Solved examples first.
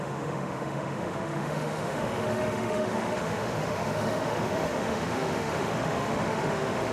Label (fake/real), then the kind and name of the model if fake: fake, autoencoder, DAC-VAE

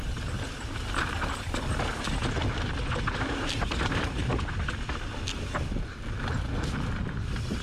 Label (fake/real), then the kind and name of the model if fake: real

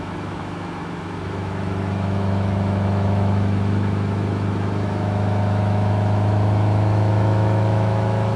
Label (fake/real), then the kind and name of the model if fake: fake, autoencoder, DAC-VAE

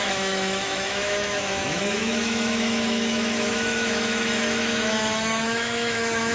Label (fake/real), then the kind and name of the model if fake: fake, autoencoder, DAC-VAE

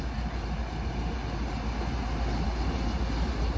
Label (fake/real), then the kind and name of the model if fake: real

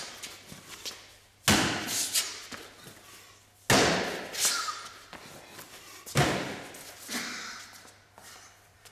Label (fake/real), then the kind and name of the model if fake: real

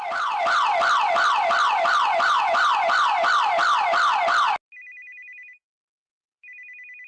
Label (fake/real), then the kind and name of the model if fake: real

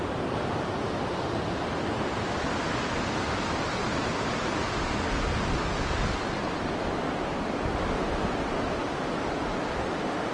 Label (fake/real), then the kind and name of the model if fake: real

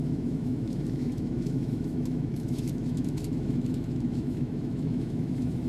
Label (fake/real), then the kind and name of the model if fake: fake, autoencoder, DAC-VAE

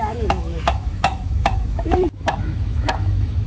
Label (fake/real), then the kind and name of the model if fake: fake, autoencoder, DAC-VAE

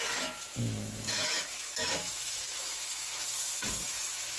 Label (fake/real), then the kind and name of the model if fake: fake, autoencoder, DAC-VAE